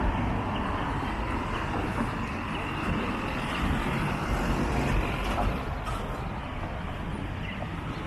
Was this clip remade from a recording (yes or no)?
no